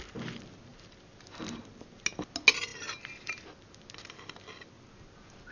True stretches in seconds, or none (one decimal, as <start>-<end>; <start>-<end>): 0.0-5.5

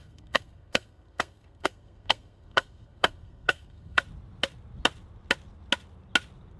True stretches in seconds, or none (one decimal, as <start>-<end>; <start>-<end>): 4.0-6.6

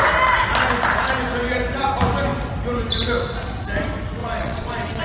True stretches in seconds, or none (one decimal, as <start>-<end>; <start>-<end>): 0.0-4.2

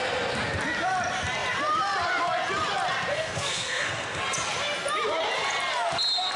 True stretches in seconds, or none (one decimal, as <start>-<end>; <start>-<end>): 0.0-3.1; 4.2-6.4